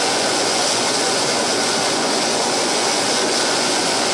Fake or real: fake